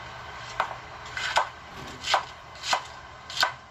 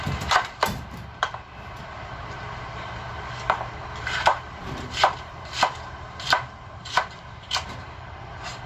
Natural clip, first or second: first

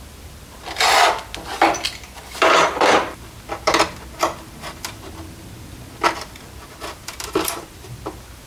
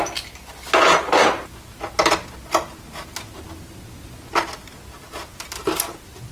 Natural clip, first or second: second